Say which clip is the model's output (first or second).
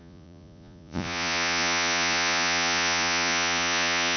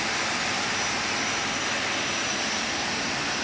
first